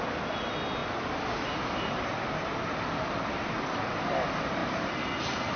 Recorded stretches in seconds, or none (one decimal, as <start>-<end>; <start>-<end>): 0.0-5.6